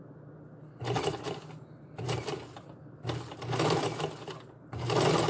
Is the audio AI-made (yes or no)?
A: no